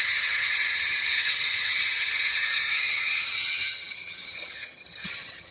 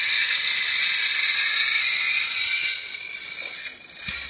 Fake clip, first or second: first